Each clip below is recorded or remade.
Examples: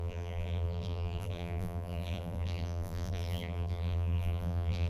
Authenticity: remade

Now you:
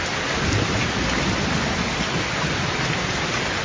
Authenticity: recorded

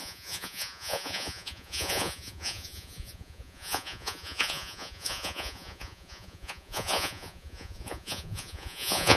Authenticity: remade